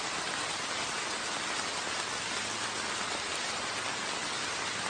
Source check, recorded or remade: recorded